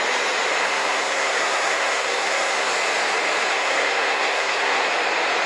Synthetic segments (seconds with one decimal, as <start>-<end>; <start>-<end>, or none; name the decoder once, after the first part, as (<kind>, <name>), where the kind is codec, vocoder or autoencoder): 0.6-2.7 (codec, SNAC); 3.5-4.9